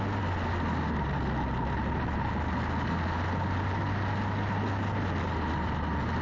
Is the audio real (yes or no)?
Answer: yes